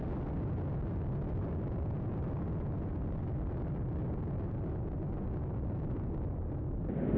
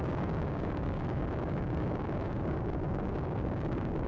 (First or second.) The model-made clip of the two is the second